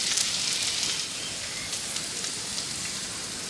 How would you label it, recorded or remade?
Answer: recorded